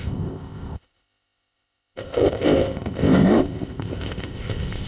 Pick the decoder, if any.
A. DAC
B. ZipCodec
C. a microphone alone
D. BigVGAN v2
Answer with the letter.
B